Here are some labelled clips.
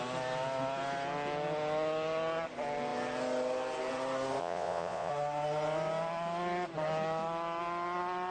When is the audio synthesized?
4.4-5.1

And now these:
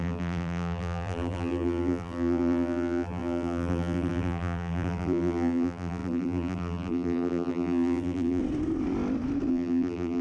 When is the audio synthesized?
0.0-8.4; 9.5-10.2

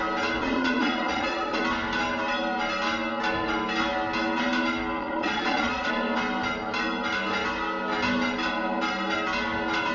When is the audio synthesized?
0.4-1.6; 5.0-5.9

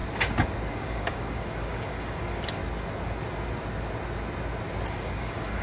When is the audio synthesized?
0.7-2.6; 4.9-5.6